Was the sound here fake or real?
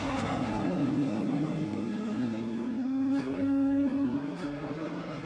fake